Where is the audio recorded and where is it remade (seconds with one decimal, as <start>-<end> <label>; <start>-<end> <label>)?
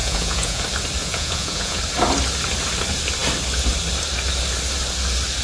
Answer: 0.0-0.6 remade; 0.6-1.0 recorded; 1.0-1.8 remade; 1.8-5.4 recorded